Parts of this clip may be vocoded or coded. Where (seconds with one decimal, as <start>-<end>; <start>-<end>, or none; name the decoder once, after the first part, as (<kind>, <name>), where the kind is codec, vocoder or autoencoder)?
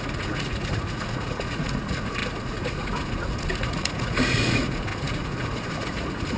0.0-6.4 (vocoder, Vocos)